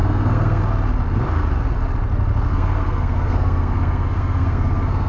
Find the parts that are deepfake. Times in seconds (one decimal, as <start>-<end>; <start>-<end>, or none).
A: 0.0-0.6; 2.5-5.1

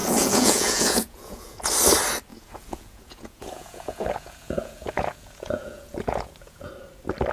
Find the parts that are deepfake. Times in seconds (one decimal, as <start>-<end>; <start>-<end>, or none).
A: 0.0-1.7; 2.3-6.7